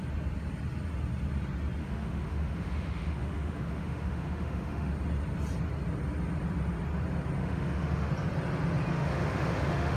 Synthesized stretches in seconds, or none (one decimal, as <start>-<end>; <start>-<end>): 1.8-4.9; 7.4-8.1; 8.9-10.0

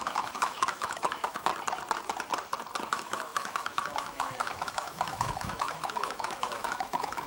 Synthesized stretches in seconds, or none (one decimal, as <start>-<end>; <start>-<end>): 0.0-1.5; 2.9-7.3

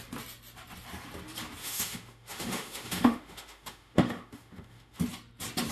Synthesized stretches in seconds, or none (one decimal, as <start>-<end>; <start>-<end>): 1.6-5.0